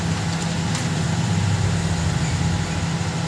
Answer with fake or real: real